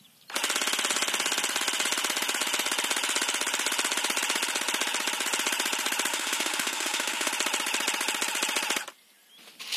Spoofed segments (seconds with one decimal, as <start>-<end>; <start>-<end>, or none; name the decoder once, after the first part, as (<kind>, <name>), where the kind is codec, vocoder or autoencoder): 6.1-7.3 (autoencoder, DAC-VAE)